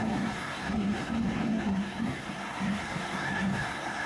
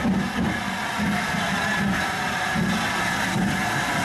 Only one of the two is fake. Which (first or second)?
first